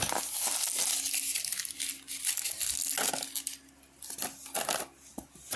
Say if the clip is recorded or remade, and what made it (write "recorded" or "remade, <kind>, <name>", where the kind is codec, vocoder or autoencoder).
recorded